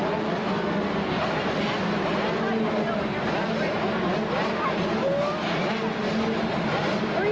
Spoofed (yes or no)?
no